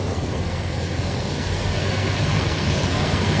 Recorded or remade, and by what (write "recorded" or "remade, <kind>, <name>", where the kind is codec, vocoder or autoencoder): remade, codec, SNAC